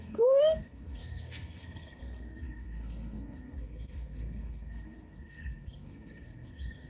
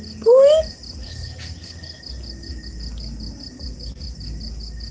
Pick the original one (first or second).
second